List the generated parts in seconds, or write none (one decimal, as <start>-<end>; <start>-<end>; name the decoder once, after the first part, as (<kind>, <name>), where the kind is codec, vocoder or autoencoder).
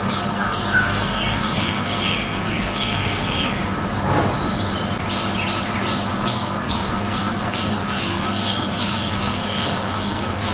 0.0-3.6 (codec, SNAC); 6.2-10.5